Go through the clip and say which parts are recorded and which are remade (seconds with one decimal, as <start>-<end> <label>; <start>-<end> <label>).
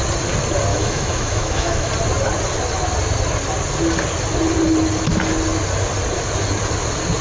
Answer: 0.0-0.7 recorded; 0.7-1.9 remade; 1.9-7.2 recorded